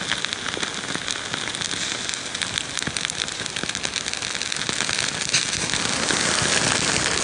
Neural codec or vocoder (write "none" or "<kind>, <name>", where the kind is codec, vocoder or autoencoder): none